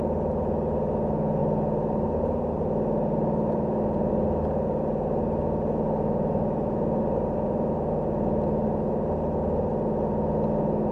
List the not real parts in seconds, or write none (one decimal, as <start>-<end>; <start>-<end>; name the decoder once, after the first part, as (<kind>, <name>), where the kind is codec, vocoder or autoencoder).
none